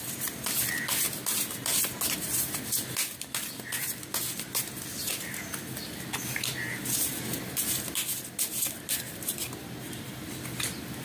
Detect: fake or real real